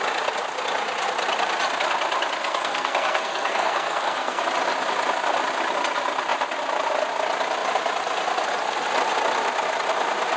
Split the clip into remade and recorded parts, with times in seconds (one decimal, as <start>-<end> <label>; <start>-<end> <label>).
0.0-2.4 recorded; 2.4-4.4 remade; 4.4-10.4 recorded

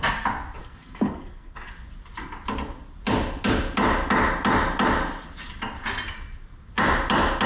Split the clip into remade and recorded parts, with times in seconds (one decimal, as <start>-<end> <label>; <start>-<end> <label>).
0.0-0.6 recorded; 0.6-1.7 remade; 1.7-7.5 recorded

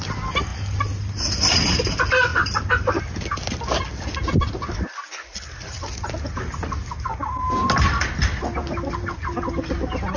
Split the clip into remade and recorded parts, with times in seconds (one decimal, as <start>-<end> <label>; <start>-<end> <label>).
0.0-10.2 recorded

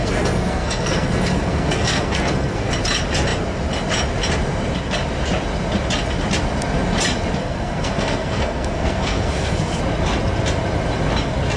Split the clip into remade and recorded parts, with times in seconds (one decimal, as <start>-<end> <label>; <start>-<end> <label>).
0.0-2.7 remade; 2.7-7.4 recorded; 7.4-9.8 remade; 9.8-11.6 recorded

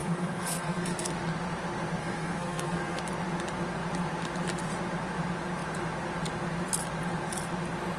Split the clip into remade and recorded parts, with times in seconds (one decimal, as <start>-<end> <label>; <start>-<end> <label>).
0.0-1.1 remade; 1.1-2.0 recorded; 2.0-3.0 remade; 3.0-8.0 recorded